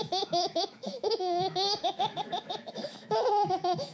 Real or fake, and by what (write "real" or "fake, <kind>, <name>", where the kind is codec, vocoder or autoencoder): fake, autoencoder, DAC-VAE